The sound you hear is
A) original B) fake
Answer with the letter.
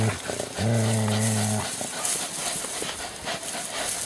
A